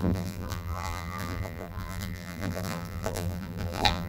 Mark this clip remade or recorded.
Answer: remade